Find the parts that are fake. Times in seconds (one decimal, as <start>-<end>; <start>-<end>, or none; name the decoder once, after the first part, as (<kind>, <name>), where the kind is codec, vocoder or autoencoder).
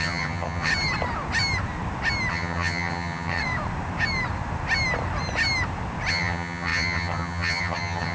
0.0-0.7 (vocoder, HiFi-GAN); 2.3-3.4; 6.1-8.1